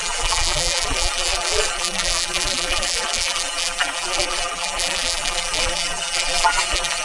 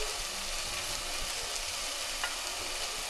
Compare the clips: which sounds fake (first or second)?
first